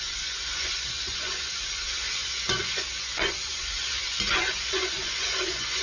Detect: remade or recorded remade